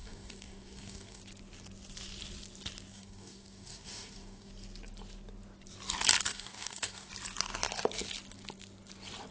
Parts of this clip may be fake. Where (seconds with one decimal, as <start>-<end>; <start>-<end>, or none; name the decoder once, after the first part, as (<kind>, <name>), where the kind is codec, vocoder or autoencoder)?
0.0-1.2 (codec, DAC); 2.9-4.5; 6.3-7.1